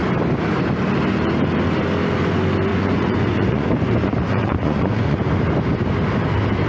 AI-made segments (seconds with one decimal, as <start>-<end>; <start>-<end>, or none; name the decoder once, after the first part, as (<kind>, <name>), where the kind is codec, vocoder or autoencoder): 2.7-5.3 (vocoder, Vocos)